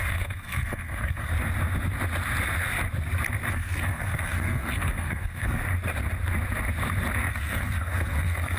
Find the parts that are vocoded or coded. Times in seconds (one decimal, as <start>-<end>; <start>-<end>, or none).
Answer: 0.0-1.3; 3.5-5.6; 7.3-8.6